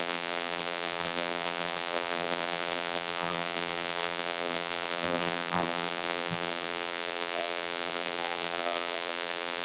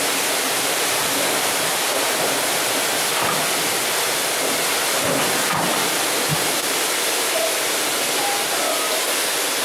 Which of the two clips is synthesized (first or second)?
first